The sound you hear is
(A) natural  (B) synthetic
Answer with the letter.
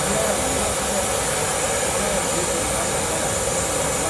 A